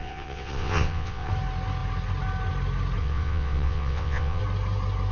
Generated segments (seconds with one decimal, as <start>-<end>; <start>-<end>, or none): 0.0-1.3; 3.0-4.4